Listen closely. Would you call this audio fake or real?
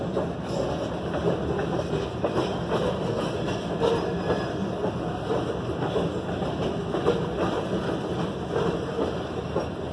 real